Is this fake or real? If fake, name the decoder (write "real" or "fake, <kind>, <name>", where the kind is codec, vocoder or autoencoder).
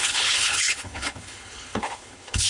fake, codec, HILCodec